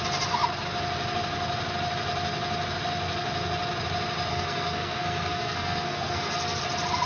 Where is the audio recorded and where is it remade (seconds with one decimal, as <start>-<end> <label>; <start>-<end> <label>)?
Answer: 0.0-4.3 recorded; 4.3-6.6 remade; 6.6-7.1 recorded